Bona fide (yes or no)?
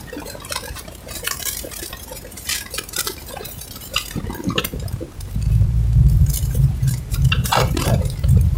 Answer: no